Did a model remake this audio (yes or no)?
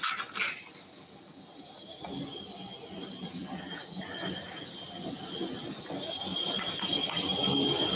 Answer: no